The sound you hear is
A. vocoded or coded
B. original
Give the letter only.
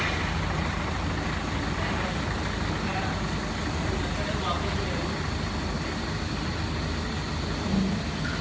B